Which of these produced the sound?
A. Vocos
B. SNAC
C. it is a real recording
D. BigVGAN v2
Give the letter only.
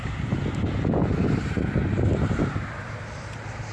C